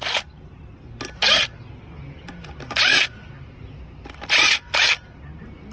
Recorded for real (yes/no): yes